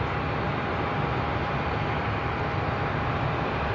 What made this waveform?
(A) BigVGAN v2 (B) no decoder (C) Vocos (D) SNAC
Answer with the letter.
B